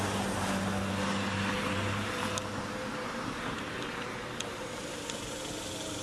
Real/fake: fake